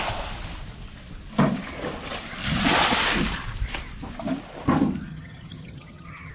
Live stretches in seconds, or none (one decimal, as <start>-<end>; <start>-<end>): 0.0-5.1